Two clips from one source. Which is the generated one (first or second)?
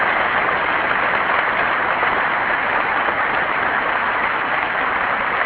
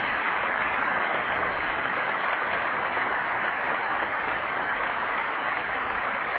second